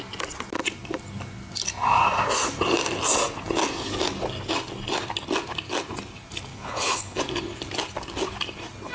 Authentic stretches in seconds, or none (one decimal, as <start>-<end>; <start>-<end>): 0.0-6.5; 7.2-8.9